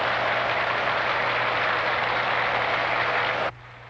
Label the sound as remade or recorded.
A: recorded